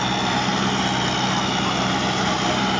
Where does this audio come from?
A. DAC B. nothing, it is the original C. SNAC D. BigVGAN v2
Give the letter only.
B